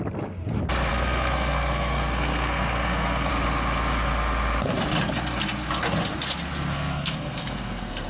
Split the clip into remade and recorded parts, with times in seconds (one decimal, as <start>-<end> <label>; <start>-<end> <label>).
0.0-0.9 recorded; 0.9-3.3 remade; 3.3-6.7 recorded; 6.7-8.1 remade